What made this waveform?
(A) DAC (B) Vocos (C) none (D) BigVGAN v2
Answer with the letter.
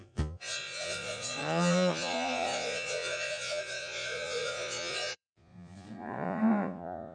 B